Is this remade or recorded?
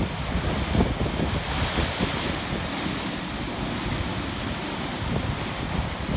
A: recorded